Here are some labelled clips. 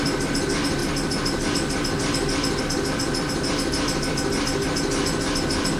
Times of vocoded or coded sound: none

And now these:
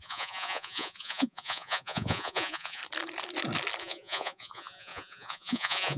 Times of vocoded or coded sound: 0.0-2.8 (vocoder, Vocos); 3.8-6.0

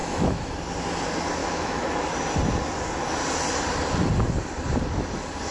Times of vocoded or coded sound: 0.0-0.5 (autoencoder, DAC-VAE); 1.4-1.9

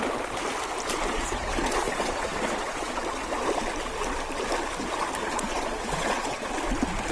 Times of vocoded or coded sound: 1.1-3.0 (vocoder, Vocos); 5.2-6.5

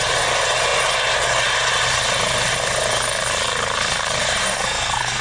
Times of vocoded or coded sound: 4.4-5.2 (codec, SNAC)

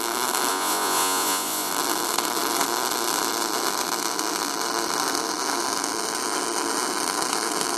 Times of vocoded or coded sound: 0.5-1.7 (vocoder, Vocos)